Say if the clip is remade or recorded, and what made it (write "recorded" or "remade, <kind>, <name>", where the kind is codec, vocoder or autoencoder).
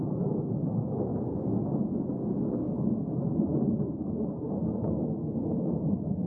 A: recorded